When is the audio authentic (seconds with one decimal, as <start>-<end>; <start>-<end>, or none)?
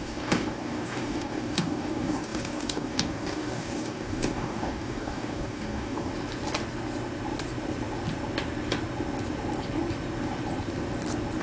6.1-11.4